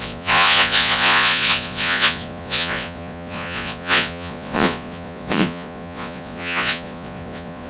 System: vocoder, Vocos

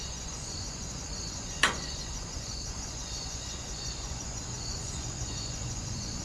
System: vocoder, Vocos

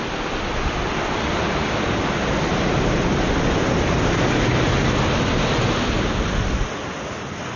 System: none